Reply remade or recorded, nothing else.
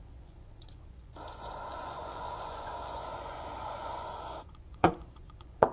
remade